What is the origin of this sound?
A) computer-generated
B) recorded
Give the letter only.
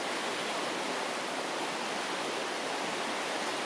B